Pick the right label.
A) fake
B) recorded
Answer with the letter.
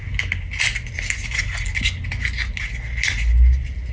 B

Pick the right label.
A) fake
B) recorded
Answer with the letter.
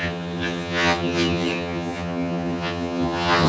A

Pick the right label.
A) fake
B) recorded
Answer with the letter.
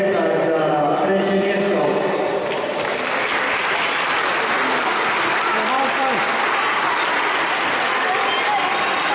B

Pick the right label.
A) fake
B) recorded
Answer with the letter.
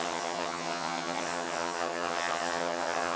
A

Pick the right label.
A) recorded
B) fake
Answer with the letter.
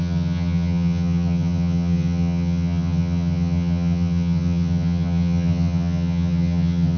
B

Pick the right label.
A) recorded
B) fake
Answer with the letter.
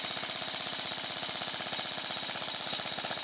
A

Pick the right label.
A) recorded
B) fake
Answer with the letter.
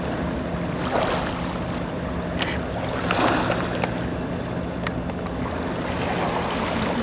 A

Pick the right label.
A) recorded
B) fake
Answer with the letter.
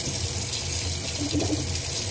A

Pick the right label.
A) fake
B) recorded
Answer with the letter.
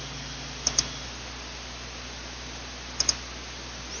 B